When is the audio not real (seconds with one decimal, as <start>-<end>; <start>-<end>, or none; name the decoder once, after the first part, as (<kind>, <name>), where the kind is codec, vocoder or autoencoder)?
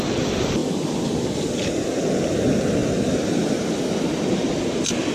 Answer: 2.8-4.6 (vocoder, BigVGAN v2)